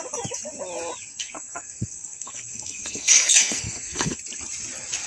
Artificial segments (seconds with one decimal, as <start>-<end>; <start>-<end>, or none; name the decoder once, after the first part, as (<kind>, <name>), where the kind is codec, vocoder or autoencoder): 1.1-4.2 (codec, SNAC)